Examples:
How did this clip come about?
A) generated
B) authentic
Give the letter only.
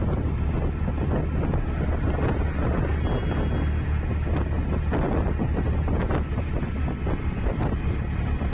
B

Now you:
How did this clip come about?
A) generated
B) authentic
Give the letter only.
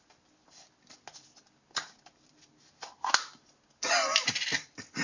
B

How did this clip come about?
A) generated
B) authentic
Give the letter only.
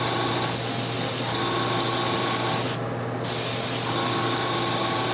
B